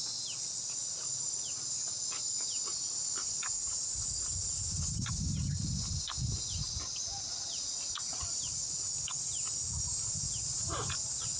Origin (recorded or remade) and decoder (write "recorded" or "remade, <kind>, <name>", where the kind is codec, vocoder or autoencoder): recorded